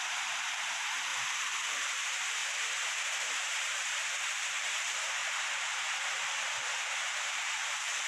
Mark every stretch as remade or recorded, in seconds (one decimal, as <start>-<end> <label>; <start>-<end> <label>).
0.0-1.1 remade; 1.1-1.9 recorded; 1.9-5.2 remade; 5.2-6.4 recorded; 6.4-8.1 remade